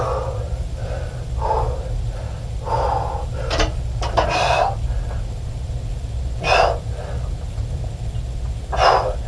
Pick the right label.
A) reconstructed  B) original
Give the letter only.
B